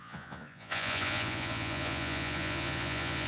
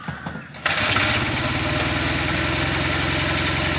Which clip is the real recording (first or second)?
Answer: second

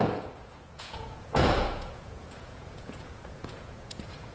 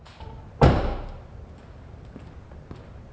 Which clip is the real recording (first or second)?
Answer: second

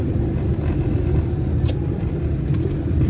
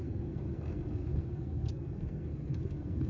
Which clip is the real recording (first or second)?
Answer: first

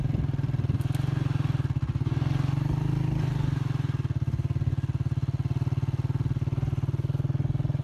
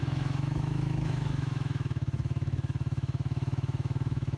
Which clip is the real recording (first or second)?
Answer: first